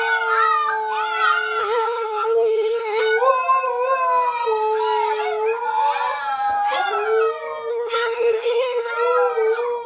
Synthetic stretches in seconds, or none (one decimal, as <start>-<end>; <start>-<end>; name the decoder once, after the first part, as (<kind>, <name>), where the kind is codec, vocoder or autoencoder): 1.6-3.0 (codec, SNAC); 7.7-8.9